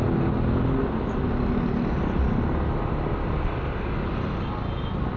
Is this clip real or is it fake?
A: real